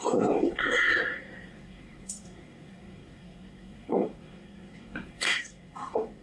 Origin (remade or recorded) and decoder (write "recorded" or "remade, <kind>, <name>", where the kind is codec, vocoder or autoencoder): remade, codec, SNAC